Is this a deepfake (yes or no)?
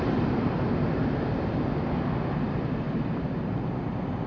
no